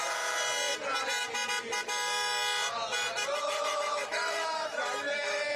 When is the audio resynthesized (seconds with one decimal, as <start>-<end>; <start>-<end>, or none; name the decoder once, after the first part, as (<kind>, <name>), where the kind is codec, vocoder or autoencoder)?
3.4-5.6 (autoencoder, DAC-VAE)